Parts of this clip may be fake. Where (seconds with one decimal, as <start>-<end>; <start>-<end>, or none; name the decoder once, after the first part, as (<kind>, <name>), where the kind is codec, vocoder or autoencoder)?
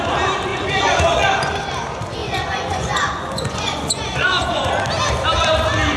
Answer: 0.5-1.6 (vocoder, Vocos); 2.2-4.7